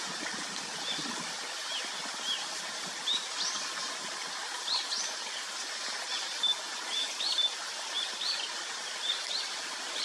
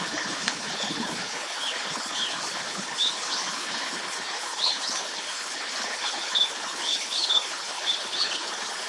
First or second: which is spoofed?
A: second